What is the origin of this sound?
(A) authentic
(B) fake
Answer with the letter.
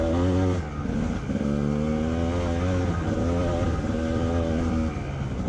A